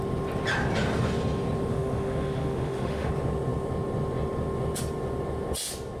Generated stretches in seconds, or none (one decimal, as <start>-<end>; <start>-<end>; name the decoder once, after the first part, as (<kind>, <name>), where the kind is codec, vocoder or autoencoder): 1.7-3.1 (autoencoder, DAC-VAE)